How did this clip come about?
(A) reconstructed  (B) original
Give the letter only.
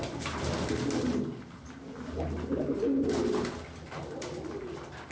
B